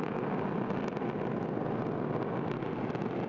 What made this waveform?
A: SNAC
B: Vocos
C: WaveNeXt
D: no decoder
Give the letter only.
D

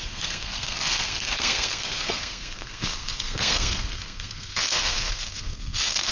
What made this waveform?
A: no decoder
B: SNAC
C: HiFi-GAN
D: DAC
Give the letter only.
B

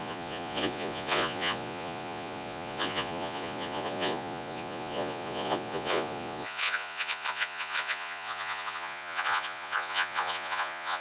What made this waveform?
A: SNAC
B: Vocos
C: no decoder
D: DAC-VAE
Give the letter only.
B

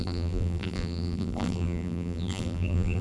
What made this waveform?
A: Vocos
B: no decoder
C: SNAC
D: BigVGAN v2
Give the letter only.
D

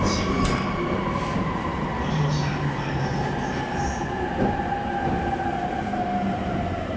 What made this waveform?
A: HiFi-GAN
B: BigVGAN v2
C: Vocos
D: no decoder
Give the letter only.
B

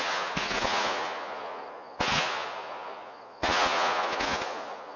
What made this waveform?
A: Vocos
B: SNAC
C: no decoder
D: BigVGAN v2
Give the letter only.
A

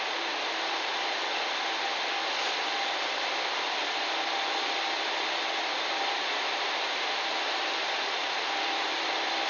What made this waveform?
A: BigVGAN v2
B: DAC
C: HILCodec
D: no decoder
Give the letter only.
A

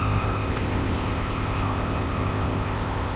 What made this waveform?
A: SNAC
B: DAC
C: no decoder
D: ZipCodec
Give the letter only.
D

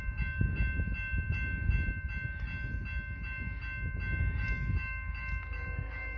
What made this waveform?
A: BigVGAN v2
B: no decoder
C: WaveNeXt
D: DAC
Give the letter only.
B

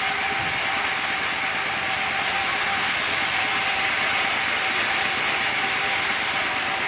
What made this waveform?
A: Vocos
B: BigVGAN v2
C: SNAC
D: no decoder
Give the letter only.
D